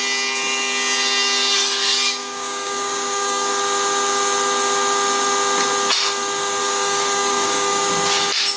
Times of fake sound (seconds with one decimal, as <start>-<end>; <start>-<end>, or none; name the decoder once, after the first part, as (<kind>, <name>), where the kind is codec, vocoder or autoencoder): 2.2-3.5 (codec, DAC); 6.6-7.9